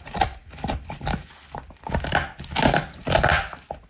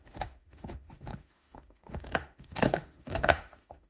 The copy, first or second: second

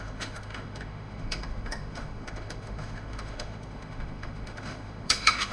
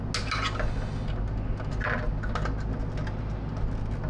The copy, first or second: first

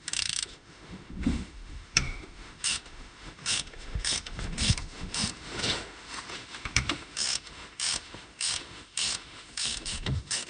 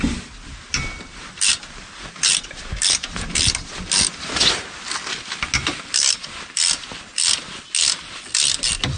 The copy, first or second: first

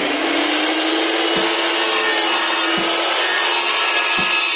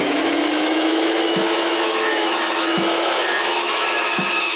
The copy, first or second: second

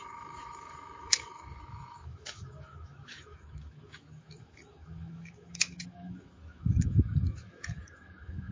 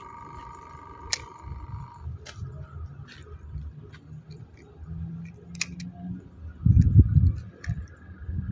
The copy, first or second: first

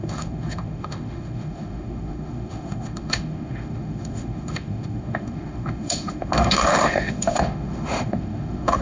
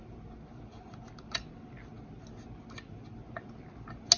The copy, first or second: first